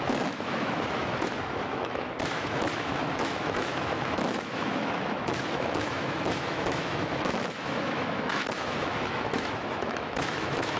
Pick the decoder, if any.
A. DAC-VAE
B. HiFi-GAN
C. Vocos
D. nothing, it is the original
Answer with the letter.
A